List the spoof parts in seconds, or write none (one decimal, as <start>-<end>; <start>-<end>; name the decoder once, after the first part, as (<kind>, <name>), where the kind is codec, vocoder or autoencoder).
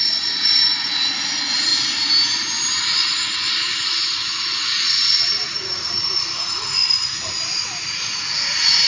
0.0-1.7 (vocoder, Vocos); 2.8-8.9